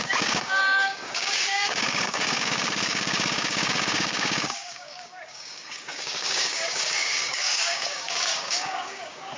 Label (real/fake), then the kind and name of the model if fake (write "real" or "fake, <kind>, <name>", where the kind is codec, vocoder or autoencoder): fake, codec, DAC